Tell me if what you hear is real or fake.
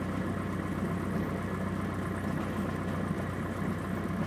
real